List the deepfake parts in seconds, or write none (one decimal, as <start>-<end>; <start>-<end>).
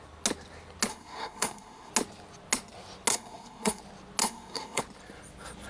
0.9-1.9; 3.1-3.8; 4.2-4.8